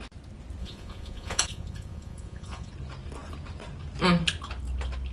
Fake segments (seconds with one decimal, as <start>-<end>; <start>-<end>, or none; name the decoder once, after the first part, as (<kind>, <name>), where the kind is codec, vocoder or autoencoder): 0.6-2.7 (vocoder, Vocos)